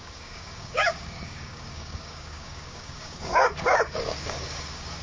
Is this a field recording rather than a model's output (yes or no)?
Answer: no